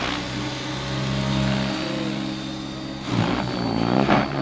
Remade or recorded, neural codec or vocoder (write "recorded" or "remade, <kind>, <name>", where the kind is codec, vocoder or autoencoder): recorded